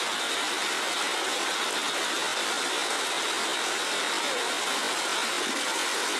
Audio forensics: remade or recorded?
recorded